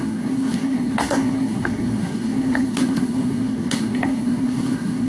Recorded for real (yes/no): no